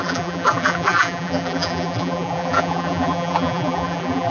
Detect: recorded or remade remade